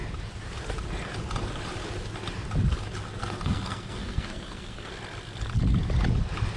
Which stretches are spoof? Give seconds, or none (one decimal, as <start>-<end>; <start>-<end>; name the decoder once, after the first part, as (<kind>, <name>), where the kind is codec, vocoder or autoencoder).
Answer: 3.2-4.9 (codec, SNAC)